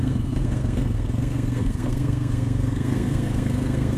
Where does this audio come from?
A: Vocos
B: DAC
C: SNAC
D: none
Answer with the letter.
C